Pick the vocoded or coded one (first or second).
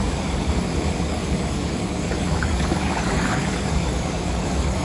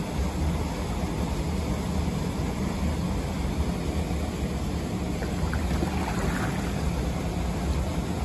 first